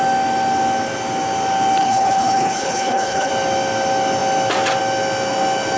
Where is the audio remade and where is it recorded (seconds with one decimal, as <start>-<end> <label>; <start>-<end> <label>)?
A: 0.0-1.8 recorded; 1.8-3.3 remade; 3.3-5.8 recorded